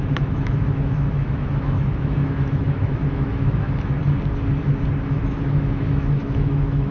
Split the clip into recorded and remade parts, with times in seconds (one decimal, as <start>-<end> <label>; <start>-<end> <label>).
0.0-4.0 remade; 4.0-5.1 recorded; 5.1-6.9 remade